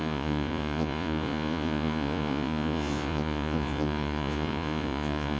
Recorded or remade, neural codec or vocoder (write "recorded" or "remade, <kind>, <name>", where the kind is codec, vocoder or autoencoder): remade, vocoder, Vocos